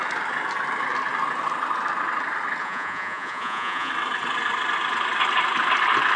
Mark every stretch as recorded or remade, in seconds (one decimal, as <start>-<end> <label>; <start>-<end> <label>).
0.0-2.6 recorded; 2.6-3.9 remade; 3.9-6.2 recorded